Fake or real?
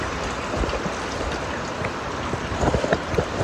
real